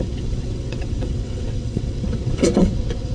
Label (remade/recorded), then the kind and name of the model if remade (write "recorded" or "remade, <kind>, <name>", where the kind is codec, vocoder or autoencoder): remade, vocoder, WaveNeXt